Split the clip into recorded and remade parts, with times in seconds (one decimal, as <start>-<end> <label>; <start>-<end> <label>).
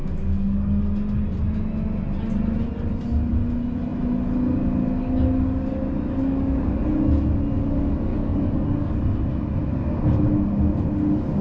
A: 0.0-0.8 remade; 0.8-6.2 recorded; 6.2-6.8 remade; 6.8-8.1 recorded; 8.1-8.9 remade; 8.9-11.4 recorded